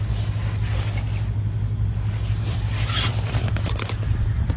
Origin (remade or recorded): recorded